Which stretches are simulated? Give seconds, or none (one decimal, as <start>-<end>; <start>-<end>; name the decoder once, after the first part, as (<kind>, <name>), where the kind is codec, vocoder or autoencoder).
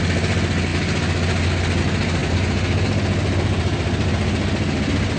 none